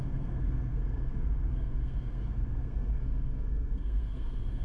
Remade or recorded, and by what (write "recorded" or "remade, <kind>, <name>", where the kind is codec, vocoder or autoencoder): remade, codec, SNAC